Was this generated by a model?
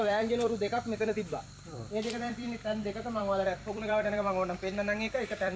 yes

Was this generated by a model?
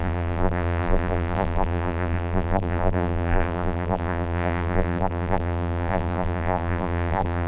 yes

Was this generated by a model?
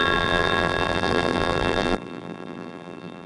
yes